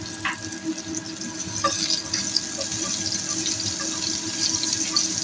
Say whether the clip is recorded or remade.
recorded